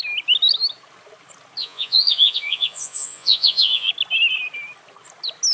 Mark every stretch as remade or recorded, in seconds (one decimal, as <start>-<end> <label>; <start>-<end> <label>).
0.0-1.6 recorded; 1.6-3.9 remade; 3.9-5.5 recorded